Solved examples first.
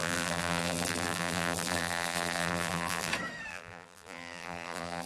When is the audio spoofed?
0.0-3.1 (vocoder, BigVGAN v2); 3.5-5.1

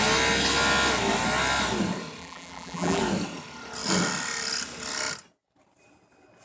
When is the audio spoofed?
2.2-3.0 (vocoder, BigVGAN v2)

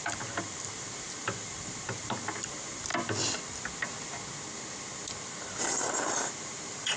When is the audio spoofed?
0.0-2.9 (vocoder, BigVGAN v2); 5.6-7.0

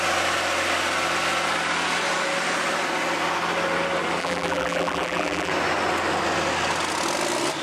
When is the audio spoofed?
4.2-5.5 (vocoder, BigVGAN v2)

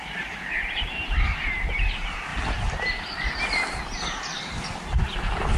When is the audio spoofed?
0.0-2.3 (vocoder, BigVGAN v2)

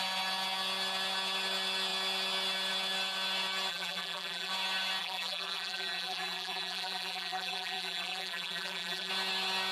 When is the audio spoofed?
3.7-4.5 (vocoder, BigVGAN v2); 5.0-9.1

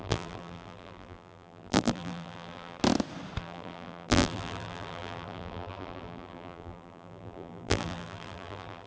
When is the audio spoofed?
0.0-2.8 (vocoder, BigVGAN v2); 3.4-8.9